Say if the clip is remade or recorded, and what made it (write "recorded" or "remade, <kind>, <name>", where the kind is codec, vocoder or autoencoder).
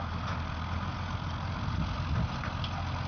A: recorded